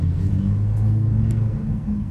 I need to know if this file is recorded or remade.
remade